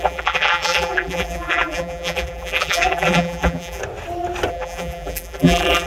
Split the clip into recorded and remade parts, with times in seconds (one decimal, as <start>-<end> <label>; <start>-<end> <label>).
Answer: 0.0-3.8 remade; 3.8-4.5 recorded; 4.5-5.9 remade